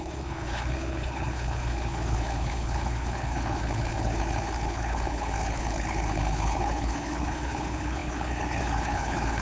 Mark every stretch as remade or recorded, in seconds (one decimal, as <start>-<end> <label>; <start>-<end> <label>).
0.0-9.4 remade